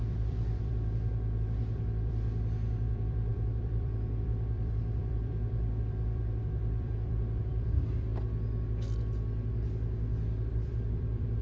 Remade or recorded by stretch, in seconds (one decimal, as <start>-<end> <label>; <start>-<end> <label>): 0.0-8.1 remade; 8.1-10.5 recorded; 10.5-11.4 remade